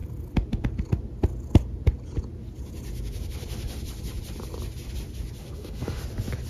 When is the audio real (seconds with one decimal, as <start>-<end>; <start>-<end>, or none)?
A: 0.0-5.4; 6.0-6.5